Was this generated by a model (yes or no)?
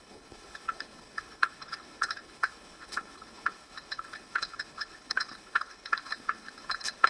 yes